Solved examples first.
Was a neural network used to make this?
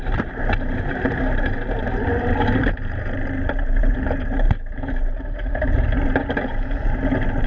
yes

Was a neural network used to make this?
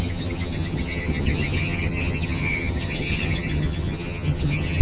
yes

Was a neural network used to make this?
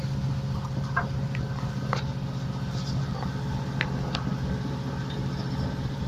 no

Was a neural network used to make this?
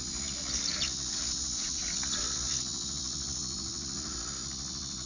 yes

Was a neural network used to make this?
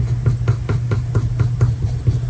no